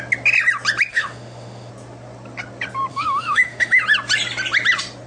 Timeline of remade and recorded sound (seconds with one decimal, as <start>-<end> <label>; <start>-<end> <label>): 0.0-0.9 recorded; 0.9-1.7 remade; 1.7-2.9 recorded; 2.9-3.8 remade; 3.8-5.1 recorded